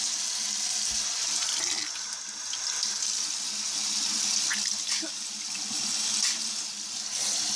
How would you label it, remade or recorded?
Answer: recorded